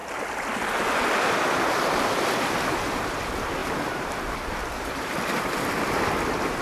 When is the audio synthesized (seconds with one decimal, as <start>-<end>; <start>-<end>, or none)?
3.6-5.1